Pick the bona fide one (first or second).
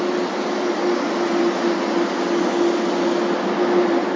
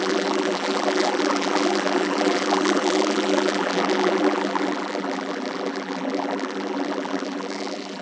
first